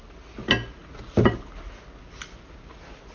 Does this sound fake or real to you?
real